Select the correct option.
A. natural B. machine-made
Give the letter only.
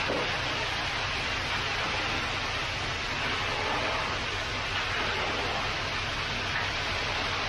A